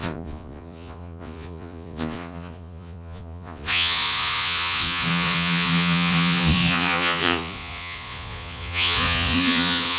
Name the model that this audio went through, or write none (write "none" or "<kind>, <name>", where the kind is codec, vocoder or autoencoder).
vocoder, Vocos